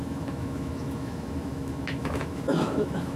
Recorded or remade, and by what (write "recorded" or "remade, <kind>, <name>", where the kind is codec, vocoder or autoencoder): remade, autoencoder, DAC-VAE